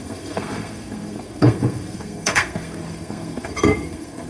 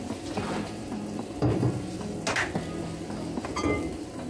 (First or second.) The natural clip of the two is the second